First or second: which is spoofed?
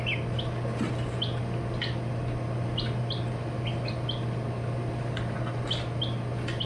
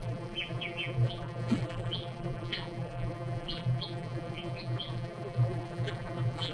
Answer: second